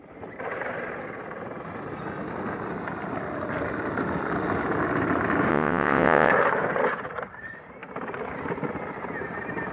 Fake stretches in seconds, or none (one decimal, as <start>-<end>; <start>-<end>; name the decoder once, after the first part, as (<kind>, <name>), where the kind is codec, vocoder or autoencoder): 5.5-6.3 (vocoder, WaveNeXt)